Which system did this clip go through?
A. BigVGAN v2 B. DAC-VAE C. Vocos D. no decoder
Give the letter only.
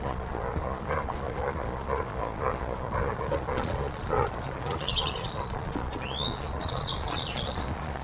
C